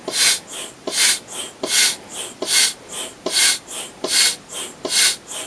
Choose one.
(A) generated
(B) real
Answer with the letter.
B